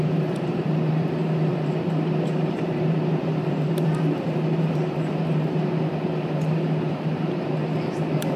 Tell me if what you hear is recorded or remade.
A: remade